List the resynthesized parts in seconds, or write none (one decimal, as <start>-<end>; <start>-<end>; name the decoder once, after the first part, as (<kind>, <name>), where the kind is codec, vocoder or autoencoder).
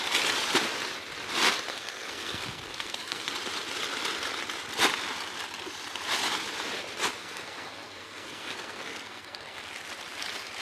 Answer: 1.7-3.3 (codec, SNAC); 7.2-9.7